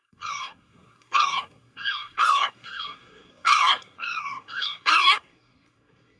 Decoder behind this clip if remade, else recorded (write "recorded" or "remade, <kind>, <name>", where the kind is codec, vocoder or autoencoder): remade, codec, SNAC